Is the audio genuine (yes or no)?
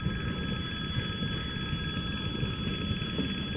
yes